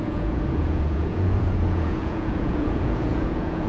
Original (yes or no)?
no